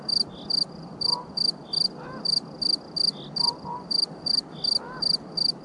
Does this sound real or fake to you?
real